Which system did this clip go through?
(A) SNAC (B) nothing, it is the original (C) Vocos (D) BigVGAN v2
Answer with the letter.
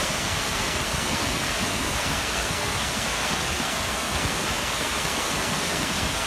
A